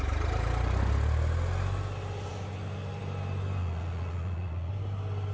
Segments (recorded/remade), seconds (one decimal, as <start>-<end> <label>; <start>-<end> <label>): 0.0-3.6 recorded; 3.6-4.7 remade; 4.7-5.3 recorded